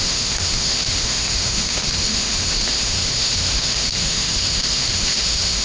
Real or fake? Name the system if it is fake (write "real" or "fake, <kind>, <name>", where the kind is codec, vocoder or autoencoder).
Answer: fake, autoencoder, DAC-VAE